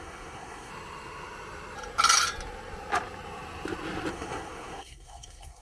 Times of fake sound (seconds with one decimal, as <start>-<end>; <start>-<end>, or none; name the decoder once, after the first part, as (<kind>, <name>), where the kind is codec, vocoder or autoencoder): 0.0-0.7 (codec, SNAC); 4.1-5.6